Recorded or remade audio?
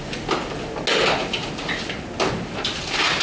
recorded